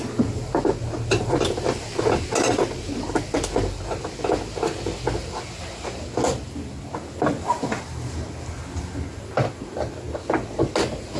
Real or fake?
real